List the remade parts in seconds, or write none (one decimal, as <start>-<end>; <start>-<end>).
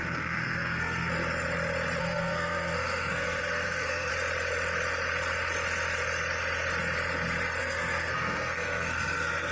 0.0-1.1; 2.0-4.1; 7.6-9.5